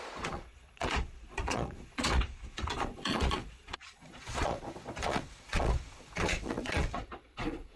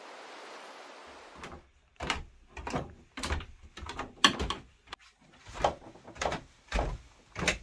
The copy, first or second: first